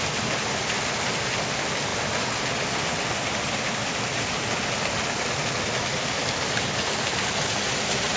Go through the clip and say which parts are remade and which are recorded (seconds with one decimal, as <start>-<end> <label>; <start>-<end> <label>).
0.0-8.2 recorded